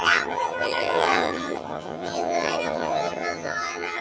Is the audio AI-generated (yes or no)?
yes